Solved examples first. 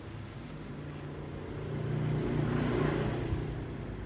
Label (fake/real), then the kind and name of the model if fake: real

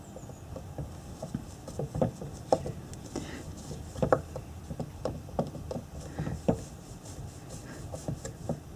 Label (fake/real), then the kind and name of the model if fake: real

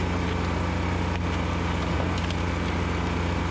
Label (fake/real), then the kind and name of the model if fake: real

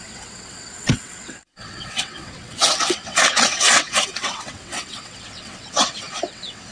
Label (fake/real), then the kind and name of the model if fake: fake, vocoder, WaveNeXt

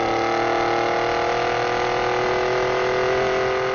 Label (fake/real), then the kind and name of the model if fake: real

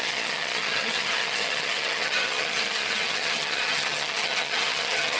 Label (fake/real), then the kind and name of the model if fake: fake, vocoder, HiFi-GAN